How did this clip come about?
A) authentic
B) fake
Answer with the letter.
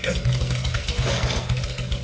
B